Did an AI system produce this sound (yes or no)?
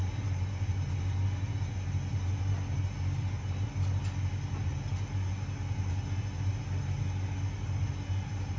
no